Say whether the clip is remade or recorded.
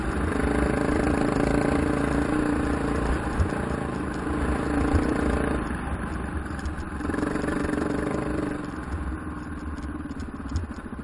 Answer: recorded